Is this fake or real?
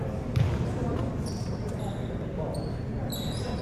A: real